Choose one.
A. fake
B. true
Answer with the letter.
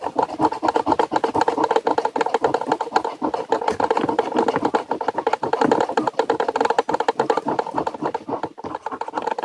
B